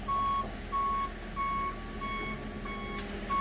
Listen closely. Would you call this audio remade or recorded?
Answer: recorded